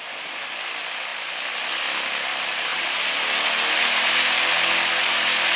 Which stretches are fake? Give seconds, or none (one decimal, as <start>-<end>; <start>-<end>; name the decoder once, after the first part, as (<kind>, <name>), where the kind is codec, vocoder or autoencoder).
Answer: none

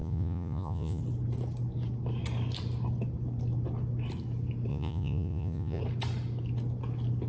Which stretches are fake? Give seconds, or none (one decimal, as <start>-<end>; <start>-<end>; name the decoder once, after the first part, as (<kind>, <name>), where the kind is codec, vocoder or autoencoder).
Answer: 0.0-1.0 (vocoder, Vocos); 4.7-5.8

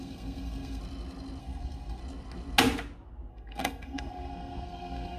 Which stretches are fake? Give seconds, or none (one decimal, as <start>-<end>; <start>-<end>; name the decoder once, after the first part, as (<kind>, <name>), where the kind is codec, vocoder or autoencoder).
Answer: 0.0-0.8 (codec, SNAC); 1.4-2.0; 3.3-5.2

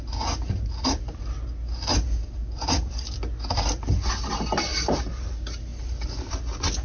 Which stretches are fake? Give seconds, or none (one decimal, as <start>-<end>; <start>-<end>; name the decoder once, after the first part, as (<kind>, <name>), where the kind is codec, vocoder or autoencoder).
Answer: 4.7-5.3 (vocoder, BigVGAN v2); 5.7-6.3

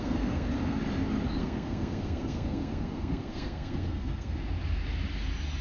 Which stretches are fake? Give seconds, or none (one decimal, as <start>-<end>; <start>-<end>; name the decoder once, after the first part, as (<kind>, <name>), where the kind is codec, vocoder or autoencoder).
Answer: 0.0-0.8 (codec, SNAC); 1.4-4.4

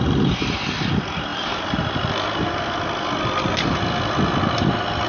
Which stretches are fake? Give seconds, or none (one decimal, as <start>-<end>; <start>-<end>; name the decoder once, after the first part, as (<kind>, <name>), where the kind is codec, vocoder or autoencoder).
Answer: none